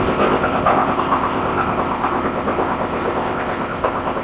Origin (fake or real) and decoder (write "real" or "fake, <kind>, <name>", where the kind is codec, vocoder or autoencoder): fake, codec, ZipCodec